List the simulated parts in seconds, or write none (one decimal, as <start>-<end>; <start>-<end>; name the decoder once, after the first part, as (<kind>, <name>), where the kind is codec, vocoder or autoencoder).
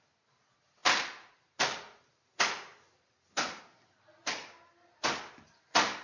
none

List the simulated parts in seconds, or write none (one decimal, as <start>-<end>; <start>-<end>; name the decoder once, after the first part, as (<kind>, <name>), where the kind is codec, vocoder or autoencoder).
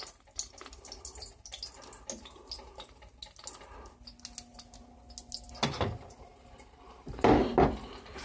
none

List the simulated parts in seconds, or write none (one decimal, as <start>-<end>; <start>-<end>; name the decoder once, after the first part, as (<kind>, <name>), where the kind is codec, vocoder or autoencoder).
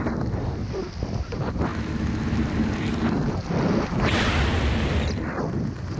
none